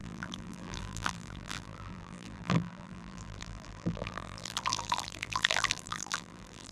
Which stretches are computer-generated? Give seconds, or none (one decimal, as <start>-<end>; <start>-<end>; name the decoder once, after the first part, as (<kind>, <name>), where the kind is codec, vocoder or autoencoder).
0.0-6.7 (vocoder, BigVGAN v2)

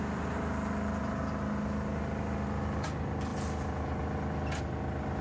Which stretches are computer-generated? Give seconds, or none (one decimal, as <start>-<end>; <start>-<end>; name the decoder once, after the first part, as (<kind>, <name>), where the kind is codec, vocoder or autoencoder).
none

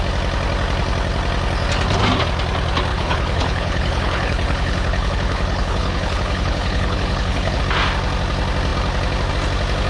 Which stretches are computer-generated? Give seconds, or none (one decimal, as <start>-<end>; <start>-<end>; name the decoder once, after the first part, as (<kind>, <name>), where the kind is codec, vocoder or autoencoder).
2.9-7.6 (codec, HILCodec)

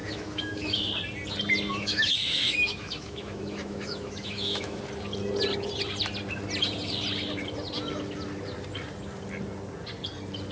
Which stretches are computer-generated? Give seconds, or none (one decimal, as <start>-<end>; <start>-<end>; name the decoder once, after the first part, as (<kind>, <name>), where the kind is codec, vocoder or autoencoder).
0.0-0.9 (autoencoder, DAC-VAE); 1.7-4.8

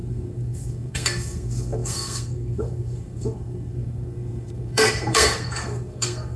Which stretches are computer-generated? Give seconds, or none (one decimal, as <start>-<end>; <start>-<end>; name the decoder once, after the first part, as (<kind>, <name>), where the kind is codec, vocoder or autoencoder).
0.0-6.4 (codec, SNAC)

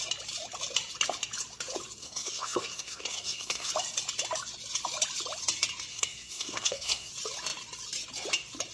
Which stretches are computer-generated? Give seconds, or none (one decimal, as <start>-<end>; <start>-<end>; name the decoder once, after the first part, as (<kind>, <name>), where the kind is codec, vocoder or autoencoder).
2.0-3.7 (codec, SNAC); 5.9-7.1